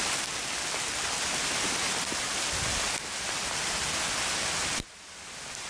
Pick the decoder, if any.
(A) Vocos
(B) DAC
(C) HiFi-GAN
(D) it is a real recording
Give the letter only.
D